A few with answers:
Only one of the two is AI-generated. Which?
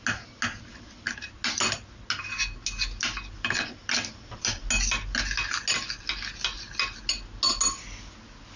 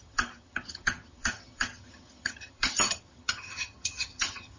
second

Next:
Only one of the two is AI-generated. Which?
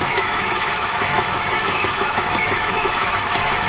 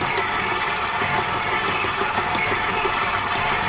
first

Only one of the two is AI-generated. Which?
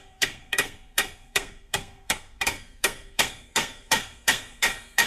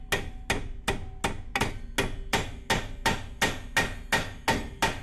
first